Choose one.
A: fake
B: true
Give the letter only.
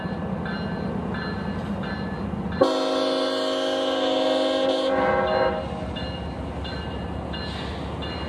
B